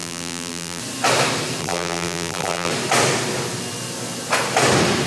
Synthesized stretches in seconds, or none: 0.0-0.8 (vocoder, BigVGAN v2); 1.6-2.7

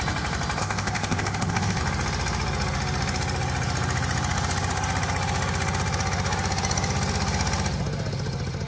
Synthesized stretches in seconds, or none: 0.6-1.8 (codec, ZipCodec)

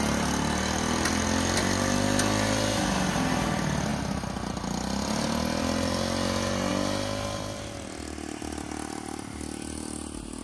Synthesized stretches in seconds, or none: none

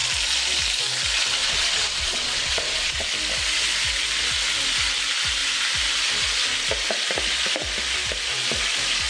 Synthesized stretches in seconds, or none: 1.4-3.1 (vocoder, Vocos)

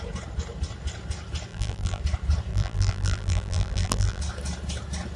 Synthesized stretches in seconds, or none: 1.5-2.0 (vocoder, BigVGAN v2); 2.5-4.2